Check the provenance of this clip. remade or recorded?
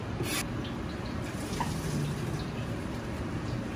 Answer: recorded